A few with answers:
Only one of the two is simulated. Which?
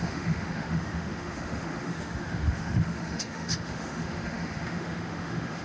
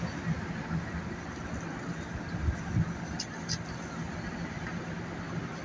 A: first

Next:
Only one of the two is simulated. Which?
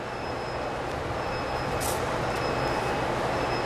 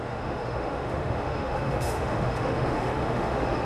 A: second